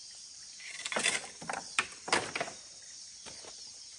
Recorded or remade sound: recorded